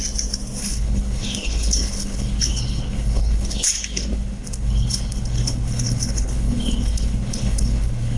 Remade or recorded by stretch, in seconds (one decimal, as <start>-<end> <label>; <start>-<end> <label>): 0.0-0.6 recorded; 0.6-8.2 remade